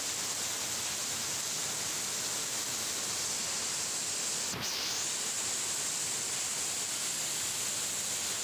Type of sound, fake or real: real